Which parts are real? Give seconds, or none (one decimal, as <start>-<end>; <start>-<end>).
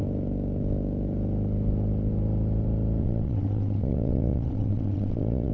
0.0-3.0